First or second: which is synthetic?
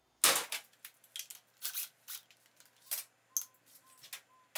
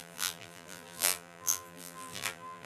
second